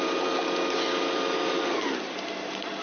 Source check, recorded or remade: recorded